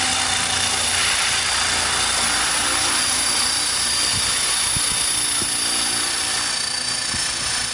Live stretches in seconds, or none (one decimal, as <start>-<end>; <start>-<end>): 0.0-7.7